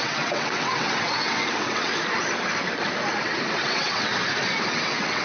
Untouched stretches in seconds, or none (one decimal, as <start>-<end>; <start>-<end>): 1.9-3.2; 4.1-4.7